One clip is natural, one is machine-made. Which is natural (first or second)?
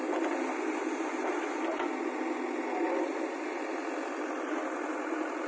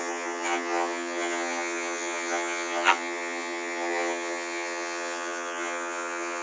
first